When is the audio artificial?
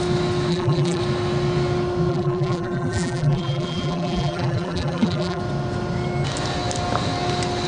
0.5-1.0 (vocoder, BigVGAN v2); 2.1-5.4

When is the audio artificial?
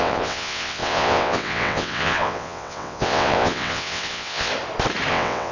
0.0-4.5 (vocoder, WaveNeXt); 5.1-5.5